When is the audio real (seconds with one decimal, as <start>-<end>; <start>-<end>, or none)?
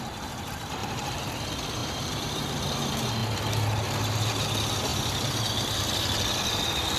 0.0-0.8; 1.3-1.8; 2.5-4.9; 5.5-7.0